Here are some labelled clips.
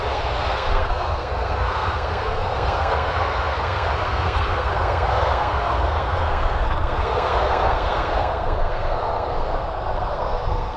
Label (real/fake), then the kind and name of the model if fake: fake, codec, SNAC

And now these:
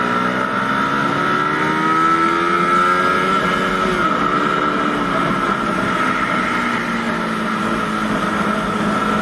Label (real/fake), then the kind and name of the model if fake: real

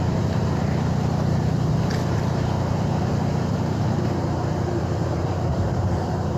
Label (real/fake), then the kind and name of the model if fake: fake, vocoder, BigVGAN v2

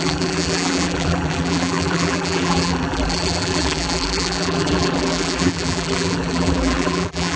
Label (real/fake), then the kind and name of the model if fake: fake, vocoder, BigVGAN v2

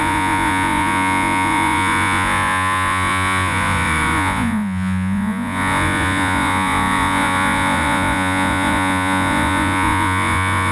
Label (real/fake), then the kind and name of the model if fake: fake, vocoder, Vocos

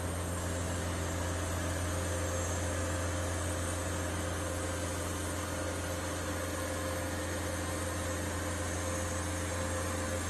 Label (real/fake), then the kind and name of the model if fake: real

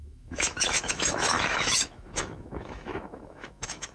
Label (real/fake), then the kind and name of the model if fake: fake, autoencoder, DAC-VAE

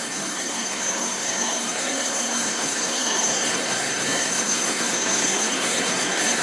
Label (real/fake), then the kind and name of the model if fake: fake, codec, SNAC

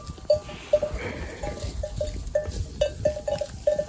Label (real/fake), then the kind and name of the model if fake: real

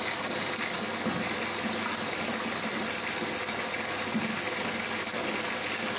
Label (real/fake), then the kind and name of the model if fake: real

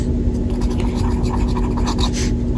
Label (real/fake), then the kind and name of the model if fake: real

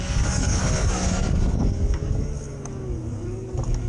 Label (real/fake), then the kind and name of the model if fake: fake, codec, DAC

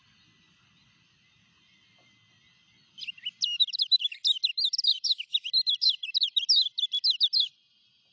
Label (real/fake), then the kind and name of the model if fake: real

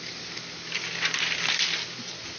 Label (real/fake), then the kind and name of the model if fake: real